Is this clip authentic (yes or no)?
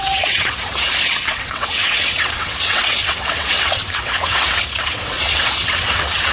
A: no